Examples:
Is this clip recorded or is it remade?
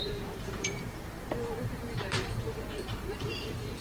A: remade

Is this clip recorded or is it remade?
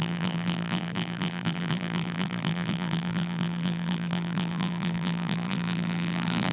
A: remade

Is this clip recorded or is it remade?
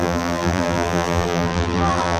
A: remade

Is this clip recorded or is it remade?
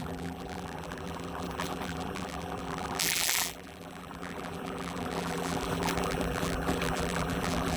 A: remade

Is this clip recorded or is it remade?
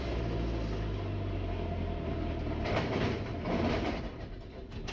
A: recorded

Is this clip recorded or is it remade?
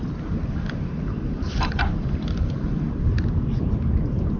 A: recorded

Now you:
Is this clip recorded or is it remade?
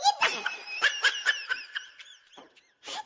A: remade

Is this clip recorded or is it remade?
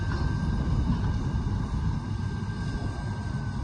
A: recorded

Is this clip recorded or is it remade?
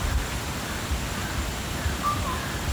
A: remade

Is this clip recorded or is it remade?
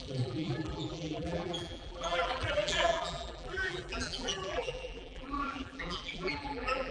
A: remade